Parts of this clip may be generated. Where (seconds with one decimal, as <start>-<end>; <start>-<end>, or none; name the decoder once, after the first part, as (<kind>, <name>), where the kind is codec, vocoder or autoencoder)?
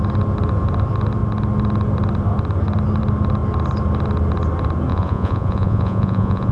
4.9-6.5 (vocoder, Vocos)